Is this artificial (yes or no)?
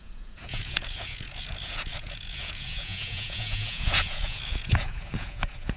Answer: yes